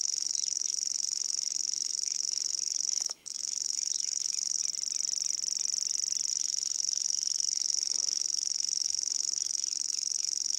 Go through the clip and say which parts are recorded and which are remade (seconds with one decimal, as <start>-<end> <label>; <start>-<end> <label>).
0.0-4.6 remade; 4.6-6.3 recorded; 6.3-10.6 remade